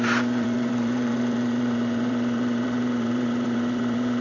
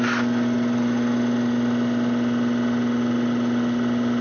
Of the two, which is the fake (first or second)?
first